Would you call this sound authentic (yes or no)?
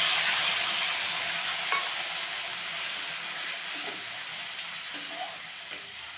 yes